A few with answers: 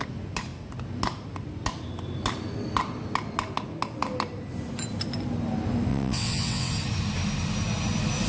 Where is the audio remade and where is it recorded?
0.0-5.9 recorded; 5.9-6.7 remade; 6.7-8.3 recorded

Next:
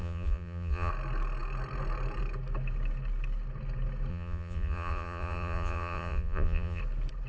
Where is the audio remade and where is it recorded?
0.0-0.9 remade; 0.9-4.1 recorded; 4.1-6.8 remade; 6.8-7.3 recorded